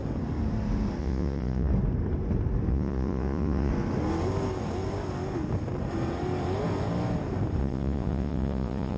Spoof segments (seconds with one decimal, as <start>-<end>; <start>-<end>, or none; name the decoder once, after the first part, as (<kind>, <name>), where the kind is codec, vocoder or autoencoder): 1.0-1.7 (vocoder, Vocos); 2.7-3.7; 7.6-9.0